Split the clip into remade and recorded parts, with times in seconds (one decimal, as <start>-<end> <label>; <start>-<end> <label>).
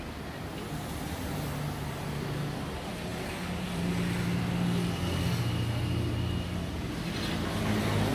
0.0-3.1 recorded; 3.1-3.9 remade; 3.9-8.1 recorded